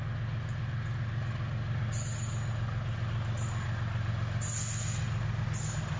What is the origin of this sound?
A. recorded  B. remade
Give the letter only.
A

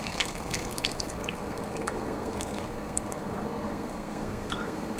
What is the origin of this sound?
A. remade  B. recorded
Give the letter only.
A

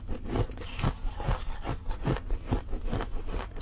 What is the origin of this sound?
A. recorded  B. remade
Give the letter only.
A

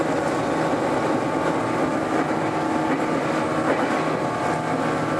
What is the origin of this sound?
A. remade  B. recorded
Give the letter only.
B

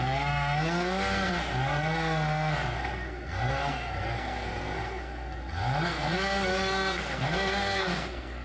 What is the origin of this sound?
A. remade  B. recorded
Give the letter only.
A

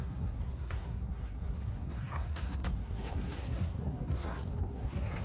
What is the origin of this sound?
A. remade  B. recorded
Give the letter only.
A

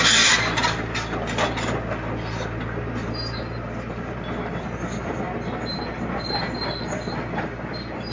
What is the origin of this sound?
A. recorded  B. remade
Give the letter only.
A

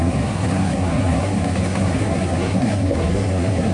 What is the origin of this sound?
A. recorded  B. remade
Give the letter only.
B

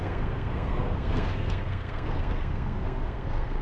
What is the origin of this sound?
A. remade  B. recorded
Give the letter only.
A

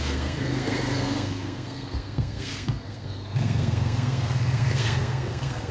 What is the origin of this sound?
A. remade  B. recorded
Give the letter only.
A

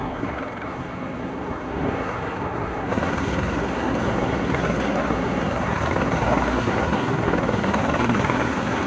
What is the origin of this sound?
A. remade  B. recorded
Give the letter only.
A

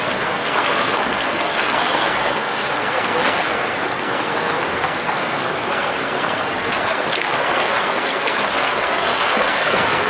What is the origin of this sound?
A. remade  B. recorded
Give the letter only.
A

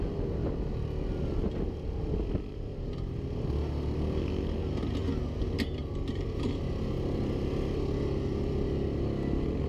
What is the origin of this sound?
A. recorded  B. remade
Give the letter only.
A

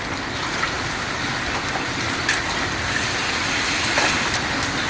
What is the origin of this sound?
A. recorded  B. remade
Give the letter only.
A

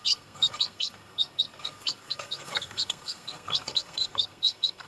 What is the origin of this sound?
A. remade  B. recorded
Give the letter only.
A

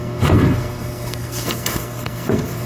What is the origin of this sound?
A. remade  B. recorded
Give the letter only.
A